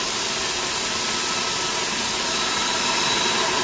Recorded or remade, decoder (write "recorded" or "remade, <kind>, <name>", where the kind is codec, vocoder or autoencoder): recorded